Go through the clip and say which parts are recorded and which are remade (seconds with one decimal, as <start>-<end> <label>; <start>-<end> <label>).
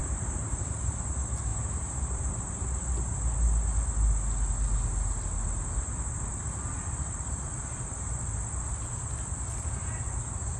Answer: 0.0-0.7 remade; 0.7-1.5 recorded; 1.5-2.3 remade; 2.3-10.6 recorded